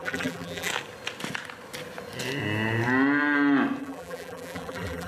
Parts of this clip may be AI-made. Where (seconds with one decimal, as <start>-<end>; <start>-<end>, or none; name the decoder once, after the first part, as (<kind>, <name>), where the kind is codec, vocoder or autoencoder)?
0.0-0.7 (vocoder, BigVGAN v2); 3.8-5.1